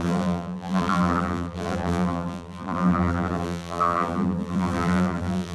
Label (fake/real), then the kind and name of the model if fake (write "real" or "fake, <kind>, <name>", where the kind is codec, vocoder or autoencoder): fake, vocoder, BigVGAN v2